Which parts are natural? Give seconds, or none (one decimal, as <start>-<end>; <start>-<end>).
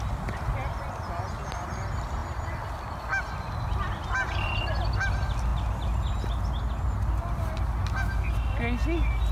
0.0-9.3